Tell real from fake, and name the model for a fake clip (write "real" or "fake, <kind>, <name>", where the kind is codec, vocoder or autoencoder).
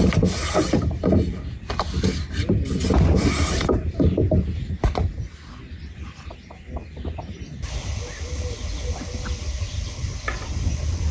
real